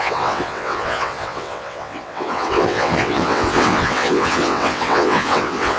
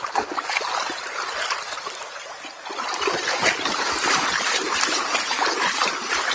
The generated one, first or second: first